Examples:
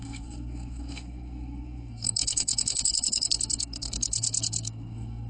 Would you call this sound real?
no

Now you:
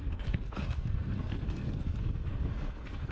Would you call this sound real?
no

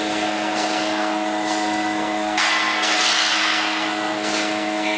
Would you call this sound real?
no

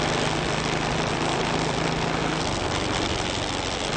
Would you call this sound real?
yes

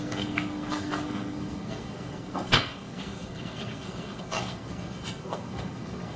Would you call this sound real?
no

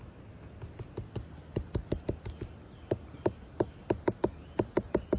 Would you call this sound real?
yes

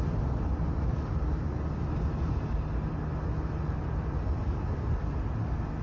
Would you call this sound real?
yes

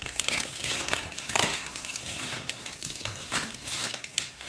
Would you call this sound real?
no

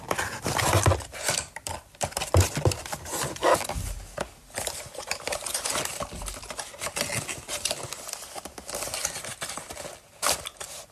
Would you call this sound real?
yes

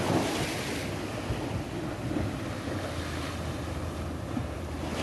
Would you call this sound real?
yes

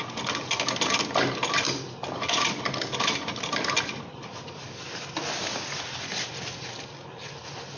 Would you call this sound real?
yes